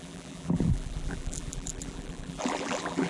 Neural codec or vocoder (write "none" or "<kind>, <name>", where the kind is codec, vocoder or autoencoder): vocoder, BigVGAN v2